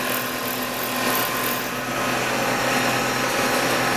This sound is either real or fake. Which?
real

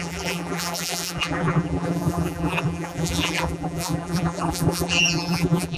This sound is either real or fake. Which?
fake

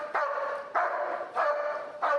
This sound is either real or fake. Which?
fake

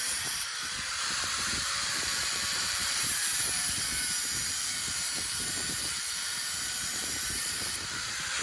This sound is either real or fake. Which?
fake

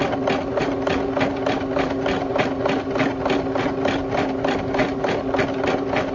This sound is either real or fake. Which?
real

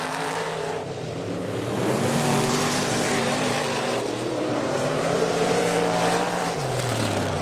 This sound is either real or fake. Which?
fake